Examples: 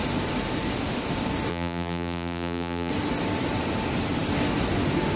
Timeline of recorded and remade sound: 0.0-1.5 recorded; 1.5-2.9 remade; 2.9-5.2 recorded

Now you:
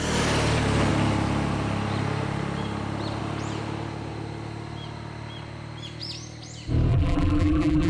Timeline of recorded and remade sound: 0.0-6.9 recorded; 6.9-7.9 remade

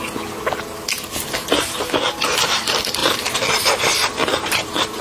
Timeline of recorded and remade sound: 0.0-3.0 recorded; 3.0-3.8 remade; 3.8-4.2 recorded; 4.2-5.0 remade

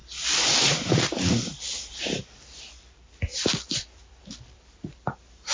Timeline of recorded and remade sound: 0.0-0.8 recorded; 0.8-5.5 remade

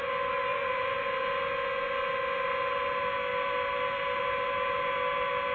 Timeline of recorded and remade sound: 0.0-0.5 recorded; 0.5-1.3 remade; 1.3-5.5 recorded

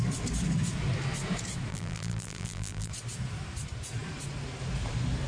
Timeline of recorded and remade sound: 0.0-1.7 recorded; 1.7-2.9 remade; 2.9-5.3 recorded